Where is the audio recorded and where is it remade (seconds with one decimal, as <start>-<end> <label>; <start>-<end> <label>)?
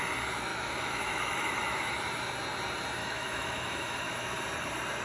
0.0-0.5 recorded; 0.5-1.9 remade; 1.9-3.0 recorded; 3.0-4.4 remade; 4.4-5.0 recorded